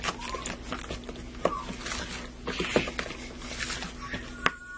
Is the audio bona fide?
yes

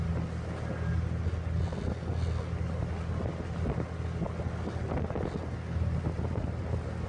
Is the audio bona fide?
yes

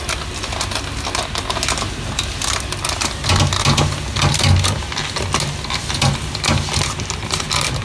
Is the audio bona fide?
yes